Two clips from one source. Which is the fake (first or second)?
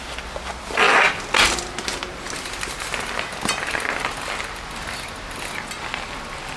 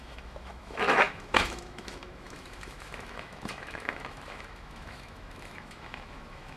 second